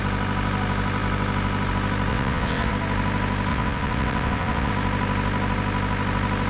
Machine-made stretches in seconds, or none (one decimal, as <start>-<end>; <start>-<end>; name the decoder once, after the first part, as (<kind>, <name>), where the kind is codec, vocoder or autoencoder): 2.1-2.7 (vocoder, WaveNeXt); 3.5-4.7